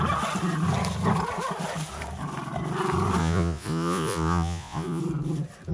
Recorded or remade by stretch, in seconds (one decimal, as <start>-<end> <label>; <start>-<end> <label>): 0.0-3.2 recorded; 3.2-5.0 remade; 5.0-5.7 recorded